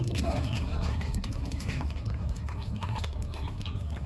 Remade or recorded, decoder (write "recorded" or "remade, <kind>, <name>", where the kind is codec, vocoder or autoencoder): remade, codec, SNAC